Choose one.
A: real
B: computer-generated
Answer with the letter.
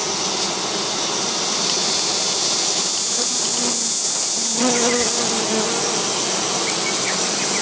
A